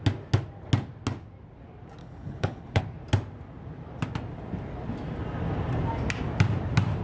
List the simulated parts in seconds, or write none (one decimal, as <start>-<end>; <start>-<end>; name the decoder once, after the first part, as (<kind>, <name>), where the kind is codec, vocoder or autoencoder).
2.0-2.8 (codec, HILCodec)

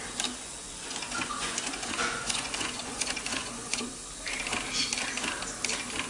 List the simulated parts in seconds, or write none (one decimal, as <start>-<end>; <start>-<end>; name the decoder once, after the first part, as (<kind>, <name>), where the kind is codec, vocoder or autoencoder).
0.4-3.9 (vocoder, Vocos)

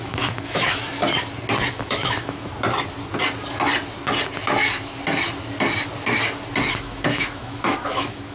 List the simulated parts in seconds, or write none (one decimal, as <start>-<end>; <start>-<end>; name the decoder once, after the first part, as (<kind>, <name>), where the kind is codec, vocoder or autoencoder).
0.0-0.8 (autoencoder, DAC-VAE); 1.7-2.5; 6.7-8.3

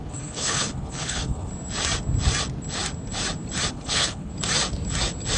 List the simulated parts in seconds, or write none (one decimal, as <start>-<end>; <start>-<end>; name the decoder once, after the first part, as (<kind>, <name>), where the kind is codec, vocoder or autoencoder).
0.0-1.5 (codec, HILCodec); 3.7-4.3

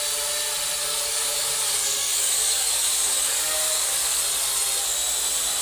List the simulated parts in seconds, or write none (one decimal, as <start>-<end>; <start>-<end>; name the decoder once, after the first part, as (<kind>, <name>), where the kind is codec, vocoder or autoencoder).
0.8-4.2 (codec, DAC)